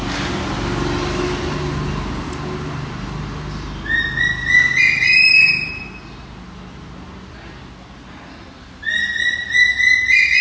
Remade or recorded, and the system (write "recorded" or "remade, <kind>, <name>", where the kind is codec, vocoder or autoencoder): recorded